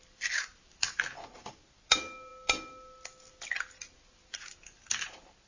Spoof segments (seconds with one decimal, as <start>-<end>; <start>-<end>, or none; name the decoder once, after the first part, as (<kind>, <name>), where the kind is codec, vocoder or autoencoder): none